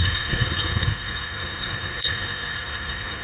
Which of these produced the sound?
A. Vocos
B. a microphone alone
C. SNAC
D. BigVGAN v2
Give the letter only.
C